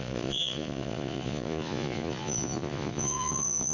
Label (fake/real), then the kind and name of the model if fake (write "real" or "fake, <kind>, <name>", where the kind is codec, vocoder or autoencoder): fake, vocoder, Vocos